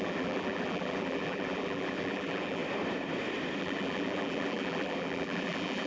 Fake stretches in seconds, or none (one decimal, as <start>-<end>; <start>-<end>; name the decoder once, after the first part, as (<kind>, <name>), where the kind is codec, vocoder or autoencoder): 0.0-2.6 (vocoder, BigVGAN v2); 3.6-5.9